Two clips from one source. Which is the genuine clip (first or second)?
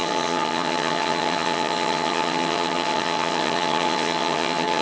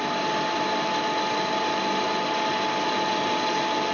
second